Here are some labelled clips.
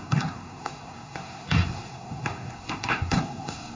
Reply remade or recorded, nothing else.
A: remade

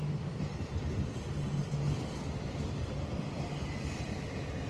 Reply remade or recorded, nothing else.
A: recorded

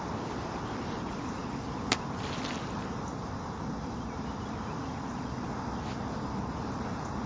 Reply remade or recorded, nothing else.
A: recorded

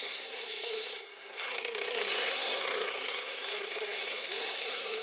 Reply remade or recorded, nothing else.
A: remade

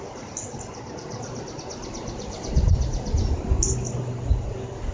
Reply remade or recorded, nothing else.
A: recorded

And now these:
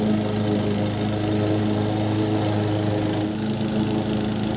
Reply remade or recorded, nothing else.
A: recorded